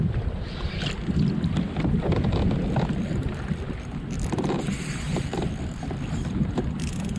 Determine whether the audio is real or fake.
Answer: fake